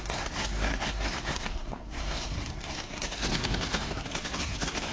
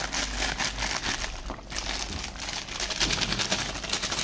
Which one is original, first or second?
second